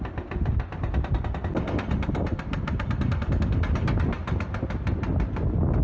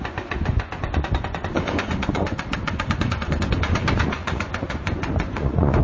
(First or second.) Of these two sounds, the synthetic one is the second